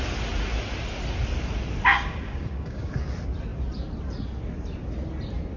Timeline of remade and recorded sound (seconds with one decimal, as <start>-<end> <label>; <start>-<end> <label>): 0.0-1.9 recorded; 1.9-3.0 remade; 3.0-5.6 recorded